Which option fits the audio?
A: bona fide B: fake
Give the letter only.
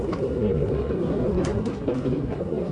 B